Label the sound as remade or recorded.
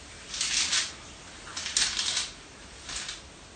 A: recorded